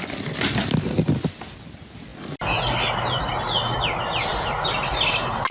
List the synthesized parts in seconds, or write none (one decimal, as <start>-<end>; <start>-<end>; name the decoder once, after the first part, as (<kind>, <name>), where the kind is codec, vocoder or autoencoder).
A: none